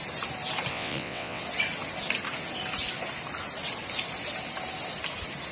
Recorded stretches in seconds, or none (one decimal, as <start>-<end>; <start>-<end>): 0.0-0.7; 1.4-5.5